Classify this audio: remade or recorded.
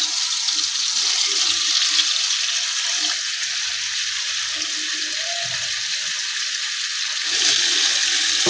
recorded